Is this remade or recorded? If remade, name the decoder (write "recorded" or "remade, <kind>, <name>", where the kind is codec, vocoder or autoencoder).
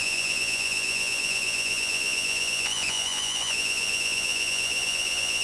remade, vocoder, Vocos